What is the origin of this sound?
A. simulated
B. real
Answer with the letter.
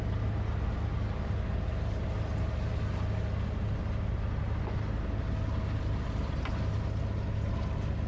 B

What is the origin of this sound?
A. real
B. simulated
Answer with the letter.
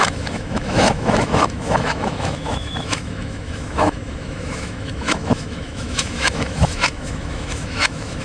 B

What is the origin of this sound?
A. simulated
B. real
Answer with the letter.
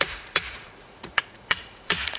A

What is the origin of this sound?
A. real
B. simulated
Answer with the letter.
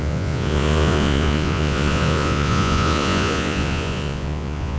B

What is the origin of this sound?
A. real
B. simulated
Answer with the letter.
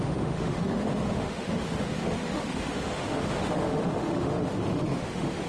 B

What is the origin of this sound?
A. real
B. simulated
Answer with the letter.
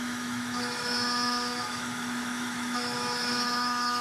B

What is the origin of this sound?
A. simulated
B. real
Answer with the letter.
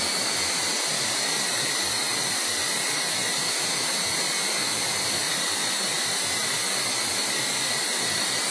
B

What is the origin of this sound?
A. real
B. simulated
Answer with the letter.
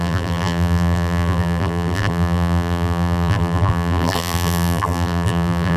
B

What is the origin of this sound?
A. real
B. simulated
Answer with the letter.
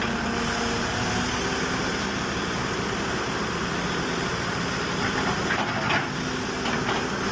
A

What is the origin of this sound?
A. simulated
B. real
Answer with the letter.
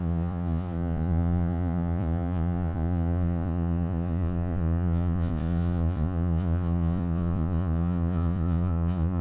A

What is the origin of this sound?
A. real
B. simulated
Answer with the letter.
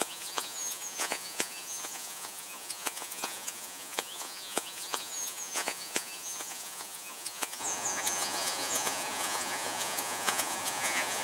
B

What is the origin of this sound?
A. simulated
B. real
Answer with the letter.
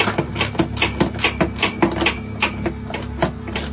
B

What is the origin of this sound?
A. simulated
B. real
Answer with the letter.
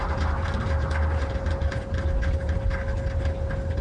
B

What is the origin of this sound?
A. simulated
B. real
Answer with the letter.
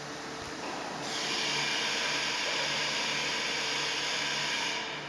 B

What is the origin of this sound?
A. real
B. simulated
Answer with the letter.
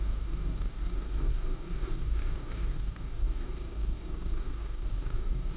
B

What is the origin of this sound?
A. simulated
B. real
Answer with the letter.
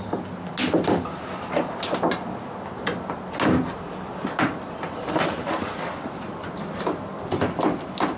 B